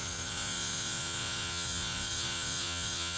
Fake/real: fake